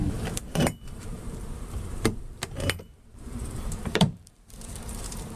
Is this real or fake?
fake